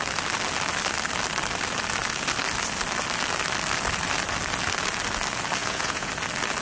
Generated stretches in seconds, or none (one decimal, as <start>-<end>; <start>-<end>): 5.6-6.1